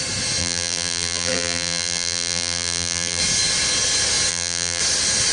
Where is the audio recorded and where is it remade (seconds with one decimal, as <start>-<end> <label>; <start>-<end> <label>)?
0.0-0.4 recorded; 0.4-3.2 remade; 3.2-4.3 recorded; 4.3-4.8 remade; 4.8-5.3 recorded